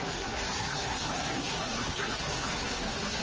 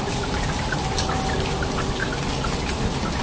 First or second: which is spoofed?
first